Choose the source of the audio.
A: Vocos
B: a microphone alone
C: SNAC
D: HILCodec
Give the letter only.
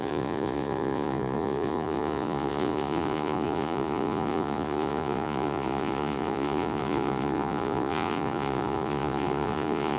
A